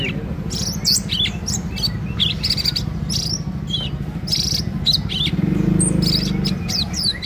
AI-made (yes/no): no